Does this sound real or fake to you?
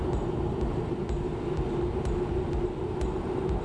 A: real